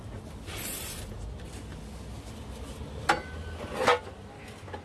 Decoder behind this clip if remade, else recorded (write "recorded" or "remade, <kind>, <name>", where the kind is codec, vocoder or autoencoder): recorded